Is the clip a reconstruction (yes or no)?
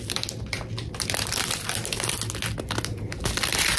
no